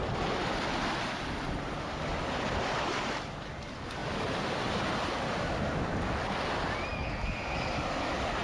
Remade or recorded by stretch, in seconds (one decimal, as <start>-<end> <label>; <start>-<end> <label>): 0.0-8.4 recorded